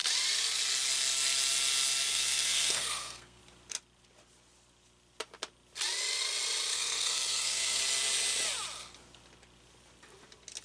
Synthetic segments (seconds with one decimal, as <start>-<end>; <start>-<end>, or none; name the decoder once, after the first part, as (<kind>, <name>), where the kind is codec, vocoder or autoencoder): 2.1-3.4 (codec, SNAC); 6.7-7.8